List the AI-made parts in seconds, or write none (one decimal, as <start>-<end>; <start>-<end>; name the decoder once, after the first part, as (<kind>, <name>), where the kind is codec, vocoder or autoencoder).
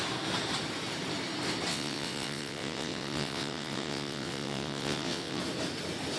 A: 1.7-5.4 (vocoder, WaveNeXt)